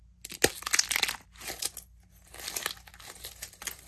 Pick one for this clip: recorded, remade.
recorded